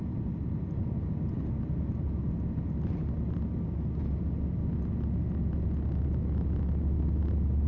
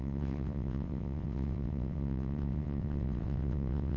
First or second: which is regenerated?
second